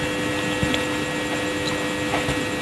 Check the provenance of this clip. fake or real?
real